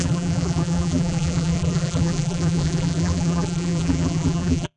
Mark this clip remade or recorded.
remade